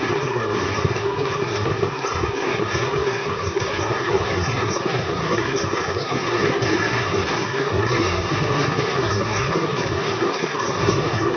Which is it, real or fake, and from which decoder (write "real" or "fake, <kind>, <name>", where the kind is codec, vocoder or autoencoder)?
fake, codec, SNAC